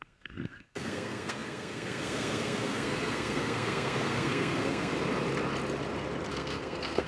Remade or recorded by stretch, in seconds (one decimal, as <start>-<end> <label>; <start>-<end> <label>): 0.0-4.9 remade; 4.9-6.3 recorded; 6.3-7.1 remade